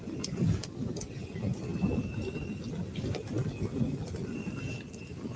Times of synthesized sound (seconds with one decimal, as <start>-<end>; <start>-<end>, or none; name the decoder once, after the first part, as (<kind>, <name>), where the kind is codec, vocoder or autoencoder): none